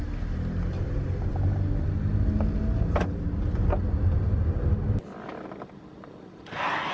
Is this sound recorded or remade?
recorded